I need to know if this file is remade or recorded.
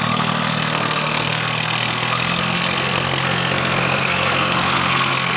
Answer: remade